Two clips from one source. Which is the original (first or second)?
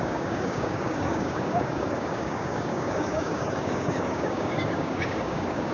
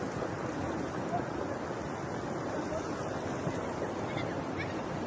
second